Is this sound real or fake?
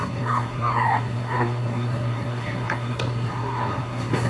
fake